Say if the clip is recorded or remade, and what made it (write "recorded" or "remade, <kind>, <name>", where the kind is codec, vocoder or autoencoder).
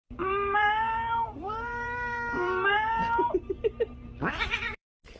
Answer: remade, vocoder, BigVGAN v2